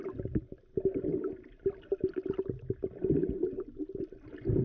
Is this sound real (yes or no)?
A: yes